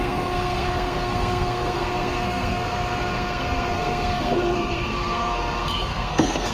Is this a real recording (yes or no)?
no